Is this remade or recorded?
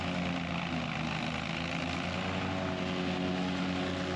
recorded